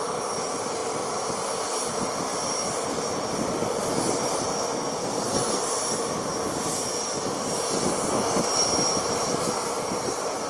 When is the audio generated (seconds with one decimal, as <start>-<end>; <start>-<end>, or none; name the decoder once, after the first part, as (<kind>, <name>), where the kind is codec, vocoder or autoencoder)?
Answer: 5.0-5.6 (codec, SNAC)